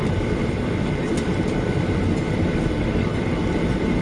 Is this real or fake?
fake